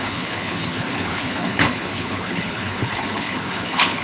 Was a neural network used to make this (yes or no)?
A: yes